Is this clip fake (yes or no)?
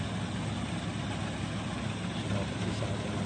no